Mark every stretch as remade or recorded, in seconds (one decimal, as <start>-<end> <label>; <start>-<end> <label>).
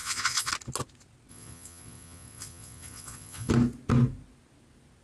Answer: 0.0-0.5 remade; 0.5-1.3 recorded; 1.3-3.5 remade; 3.5-5.0 recorded